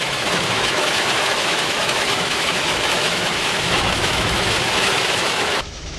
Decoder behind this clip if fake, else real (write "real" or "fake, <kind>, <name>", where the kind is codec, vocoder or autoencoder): fake, autoencoder, DAC-VAE